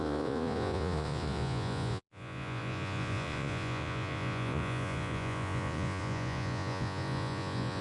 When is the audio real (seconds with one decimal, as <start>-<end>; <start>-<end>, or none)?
none